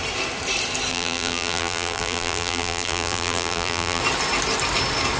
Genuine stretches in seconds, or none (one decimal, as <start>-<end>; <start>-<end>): 0.0-0.9; 4.0-5.2